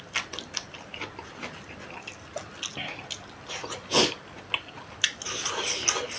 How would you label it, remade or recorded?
recorded